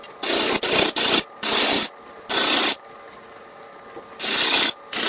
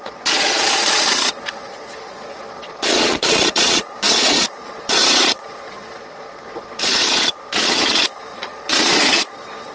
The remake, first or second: second